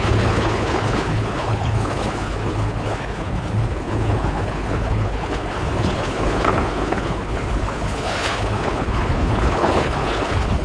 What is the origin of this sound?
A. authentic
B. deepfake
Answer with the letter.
B